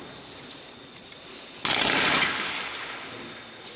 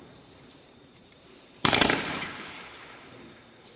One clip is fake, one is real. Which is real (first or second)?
first